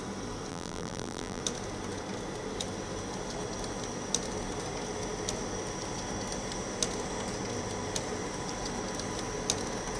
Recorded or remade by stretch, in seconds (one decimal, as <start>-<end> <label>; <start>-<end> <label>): 0.0-0.5 recorded; 0.5-1.4 remade; 1.4-10.0 recorded